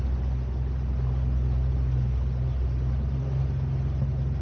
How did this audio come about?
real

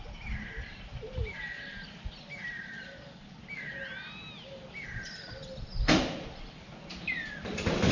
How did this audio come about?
real